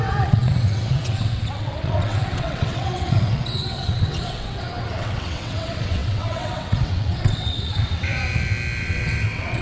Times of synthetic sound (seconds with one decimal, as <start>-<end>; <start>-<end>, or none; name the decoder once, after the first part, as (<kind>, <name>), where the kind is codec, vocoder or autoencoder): 0.0-8.1 (vocoder, WaveNeXt); 8.8-9.6